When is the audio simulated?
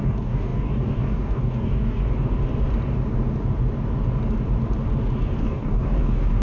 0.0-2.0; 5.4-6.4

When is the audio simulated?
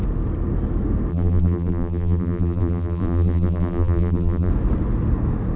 1.1-4.5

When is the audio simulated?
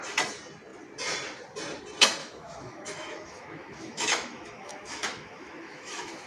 2.2-6.3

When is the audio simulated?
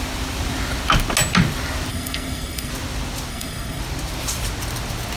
1.9-2.7; 3.3-3.8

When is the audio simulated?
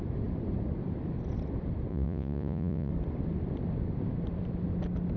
1.9-2.9